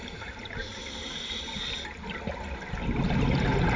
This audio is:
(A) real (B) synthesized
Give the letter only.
A